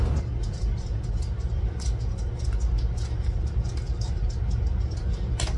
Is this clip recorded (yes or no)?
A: yes